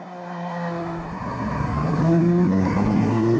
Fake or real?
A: fake